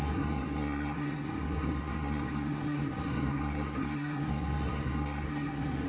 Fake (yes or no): yes